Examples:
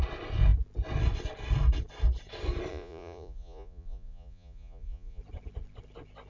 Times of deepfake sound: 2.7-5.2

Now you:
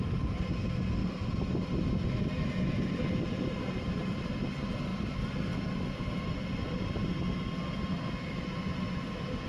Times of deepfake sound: none

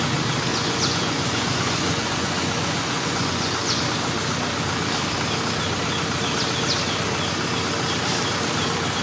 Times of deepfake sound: 0.5-3.8

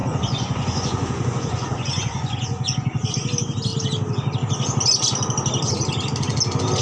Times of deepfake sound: 0.0-3.1